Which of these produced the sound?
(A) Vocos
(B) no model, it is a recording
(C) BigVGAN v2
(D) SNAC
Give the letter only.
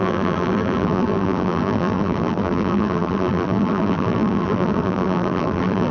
C